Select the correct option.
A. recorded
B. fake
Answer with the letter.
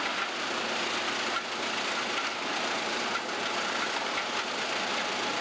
A